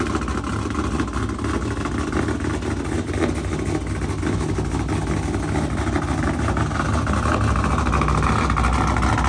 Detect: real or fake real